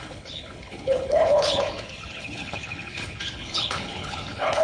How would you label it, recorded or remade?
remade